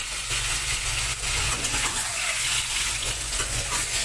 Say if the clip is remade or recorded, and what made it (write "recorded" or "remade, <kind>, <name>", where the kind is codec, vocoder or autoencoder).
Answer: remade, vocoder, Vocos